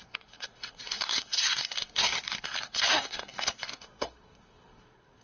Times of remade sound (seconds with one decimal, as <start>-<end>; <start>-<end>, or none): 0.0-5.2